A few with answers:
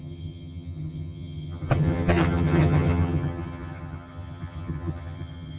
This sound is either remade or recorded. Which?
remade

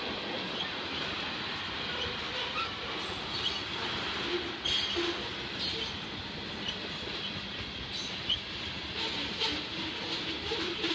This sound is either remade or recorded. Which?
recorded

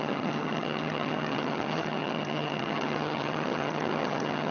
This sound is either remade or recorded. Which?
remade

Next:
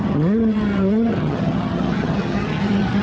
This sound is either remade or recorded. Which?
remade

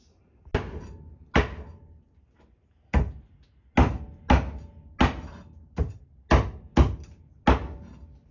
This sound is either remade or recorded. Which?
recorded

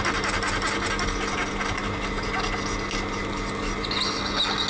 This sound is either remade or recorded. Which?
recorded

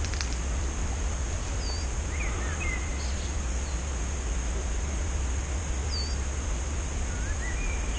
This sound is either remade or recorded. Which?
recorded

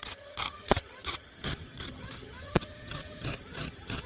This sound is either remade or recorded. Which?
remade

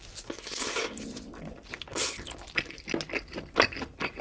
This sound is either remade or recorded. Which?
recorded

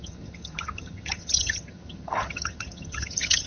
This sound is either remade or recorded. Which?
remade